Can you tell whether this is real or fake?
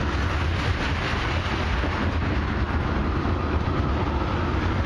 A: real